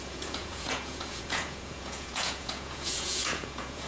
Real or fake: fake